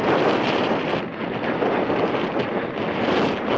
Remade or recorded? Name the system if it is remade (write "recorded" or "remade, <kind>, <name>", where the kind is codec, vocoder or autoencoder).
recorded